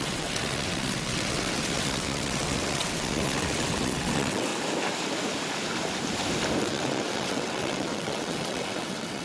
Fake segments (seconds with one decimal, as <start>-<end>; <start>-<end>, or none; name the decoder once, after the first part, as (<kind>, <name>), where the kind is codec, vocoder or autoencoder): 0.0-4.5 (vocoder, WaveNeXt); 6.6-9.2